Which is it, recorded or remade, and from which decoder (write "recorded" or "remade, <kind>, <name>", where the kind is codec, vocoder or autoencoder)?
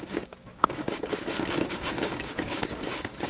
remade, codec, DAC